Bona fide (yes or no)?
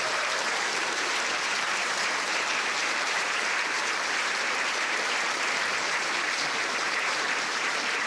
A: no